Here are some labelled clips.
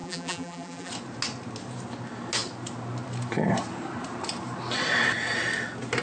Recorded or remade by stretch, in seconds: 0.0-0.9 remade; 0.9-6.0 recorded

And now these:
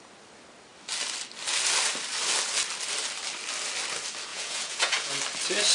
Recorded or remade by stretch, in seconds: 0.0-4.3 recorded; 4.3-5.1 remade; 5.1-5.7 recorded

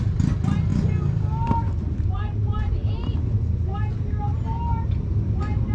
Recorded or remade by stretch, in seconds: 0.0-5.7 recorded

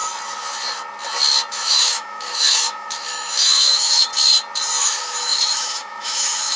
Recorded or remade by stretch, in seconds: 0.0-1.5 recorded; 1.5-4.1 remade; 4.1-4.8 recorded; 4.8-6.6 remade

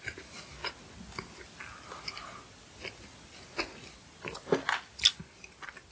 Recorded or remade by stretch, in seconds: 0.0-5.9 recorded

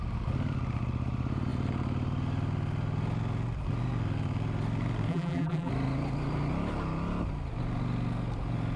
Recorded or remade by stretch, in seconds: 0.0-5.1 recorded; 5.1-5.7 remade; 5.7-8.8 recorded

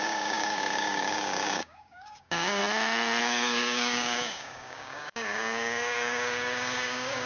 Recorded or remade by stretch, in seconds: 0.0-2.6 remade; 2.6-3.2 recorded; 3.2-7.3 remade